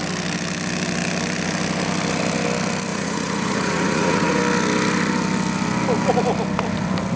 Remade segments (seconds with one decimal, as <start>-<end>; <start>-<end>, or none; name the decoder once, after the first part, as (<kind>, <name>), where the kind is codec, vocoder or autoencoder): 2.9-4.4 (vocoder, Vocos)